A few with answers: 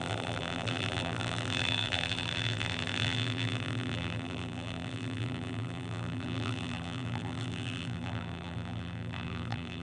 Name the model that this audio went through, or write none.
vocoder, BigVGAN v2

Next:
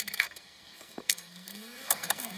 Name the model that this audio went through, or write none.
codec, SNAC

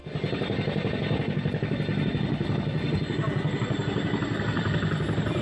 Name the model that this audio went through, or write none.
none